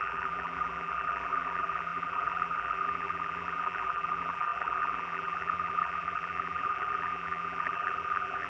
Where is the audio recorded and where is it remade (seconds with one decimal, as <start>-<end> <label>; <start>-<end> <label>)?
0.0-8.5 remade